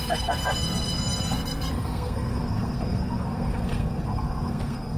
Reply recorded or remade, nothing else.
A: remade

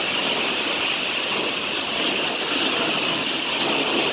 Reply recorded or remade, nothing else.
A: recorded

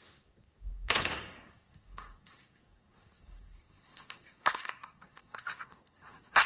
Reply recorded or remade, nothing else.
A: remade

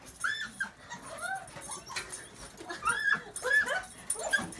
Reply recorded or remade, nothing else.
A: recorded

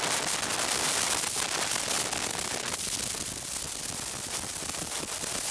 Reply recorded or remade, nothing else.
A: recorded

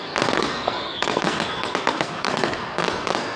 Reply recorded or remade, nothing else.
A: remade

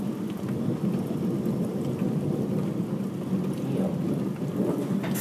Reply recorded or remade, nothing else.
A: recorded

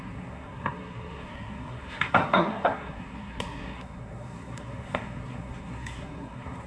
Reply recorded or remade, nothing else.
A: remade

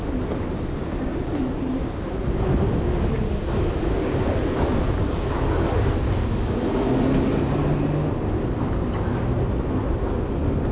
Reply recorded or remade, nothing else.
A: recorded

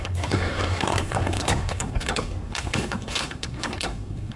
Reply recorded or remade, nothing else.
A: remade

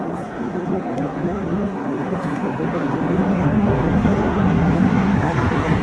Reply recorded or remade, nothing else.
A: remade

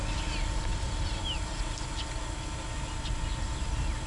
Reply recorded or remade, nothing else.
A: recorded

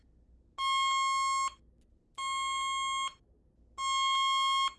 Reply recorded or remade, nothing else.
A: recorded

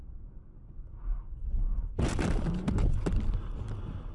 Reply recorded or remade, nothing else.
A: recorded